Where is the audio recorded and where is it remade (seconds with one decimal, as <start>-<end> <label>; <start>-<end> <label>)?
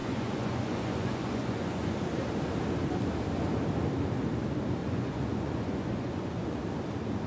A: 0.0-1.9 remade; 1.9-4.8 recorded; 4.8-6.6 remade; 6.6-7.3 recorded